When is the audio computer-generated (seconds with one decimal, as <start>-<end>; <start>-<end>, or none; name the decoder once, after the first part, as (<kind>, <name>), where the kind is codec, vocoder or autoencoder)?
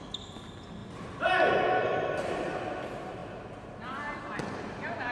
0.8-1.5 (vocoder, BigVGAN v2)